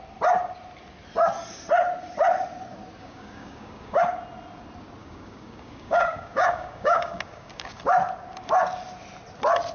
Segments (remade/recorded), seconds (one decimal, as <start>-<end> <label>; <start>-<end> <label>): 0.0-3.0 recorded; 3.0-4.0 remade; 4.0-5.0 recorded; 5.0-7.8 remade; 7.8-9.7 recorded